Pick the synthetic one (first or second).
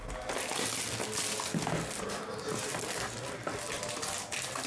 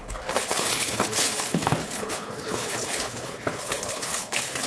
second